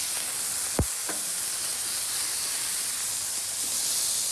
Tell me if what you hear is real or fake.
real